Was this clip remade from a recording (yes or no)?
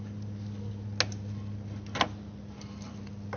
no